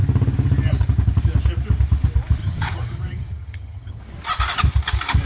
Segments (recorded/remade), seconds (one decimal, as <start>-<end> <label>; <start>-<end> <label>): 0.0-2.4 recorded; 2.4-4.0 remade; 4.0-5.3 recorded